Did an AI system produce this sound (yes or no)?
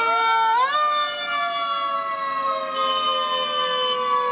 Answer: no